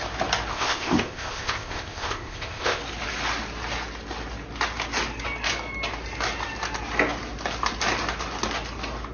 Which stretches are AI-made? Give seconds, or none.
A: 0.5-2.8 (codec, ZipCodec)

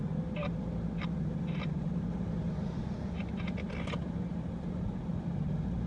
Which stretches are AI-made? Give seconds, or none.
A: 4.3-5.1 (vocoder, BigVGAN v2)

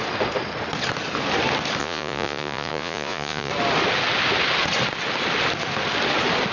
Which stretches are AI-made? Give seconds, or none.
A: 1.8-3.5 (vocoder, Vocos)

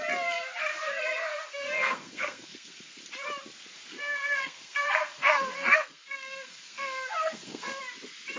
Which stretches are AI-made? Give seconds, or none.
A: 0.7-3.0 (codec, SNAC); 3.9-7.8

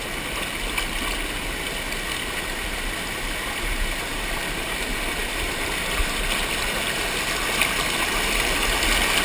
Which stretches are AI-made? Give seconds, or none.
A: 4.1-6.2 (vocoder, BigVGAN v2)

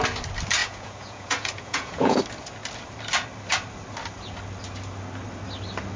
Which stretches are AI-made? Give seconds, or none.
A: 0.6-2.2 (vocoder, Vocos)